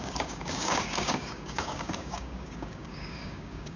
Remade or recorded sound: remade